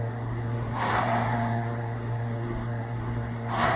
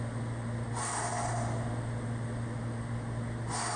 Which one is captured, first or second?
second